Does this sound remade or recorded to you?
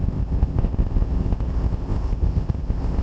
remade